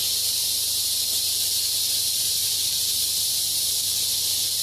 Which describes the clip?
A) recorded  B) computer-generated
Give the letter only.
A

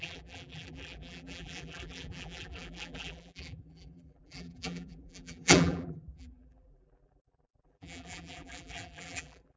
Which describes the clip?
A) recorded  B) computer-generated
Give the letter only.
B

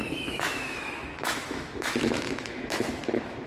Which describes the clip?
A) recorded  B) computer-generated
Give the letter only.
B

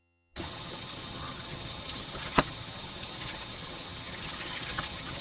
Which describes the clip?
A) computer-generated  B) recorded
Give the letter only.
A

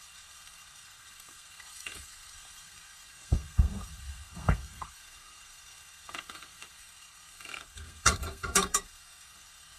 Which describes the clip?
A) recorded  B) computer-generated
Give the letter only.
B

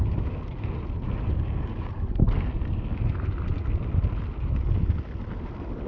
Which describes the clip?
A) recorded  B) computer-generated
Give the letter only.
A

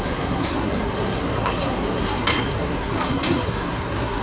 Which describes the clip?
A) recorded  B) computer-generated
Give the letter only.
B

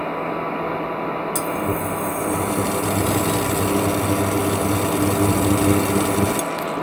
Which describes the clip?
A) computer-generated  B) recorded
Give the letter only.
B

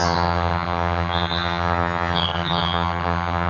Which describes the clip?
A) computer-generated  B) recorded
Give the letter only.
A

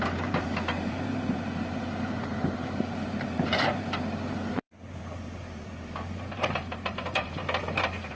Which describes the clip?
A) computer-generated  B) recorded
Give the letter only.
A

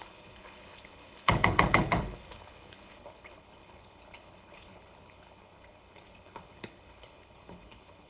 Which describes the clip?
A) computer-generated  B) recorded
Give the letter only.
A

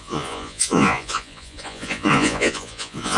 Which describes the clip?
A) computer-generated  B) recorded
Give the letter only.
A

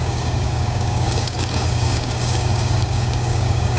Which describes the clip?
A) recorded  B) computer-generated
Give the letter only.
B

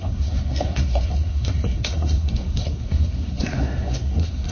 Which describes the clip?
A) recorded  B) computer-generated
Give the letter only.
B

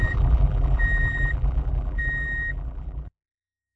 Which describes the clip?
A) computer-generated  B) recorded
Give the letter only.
A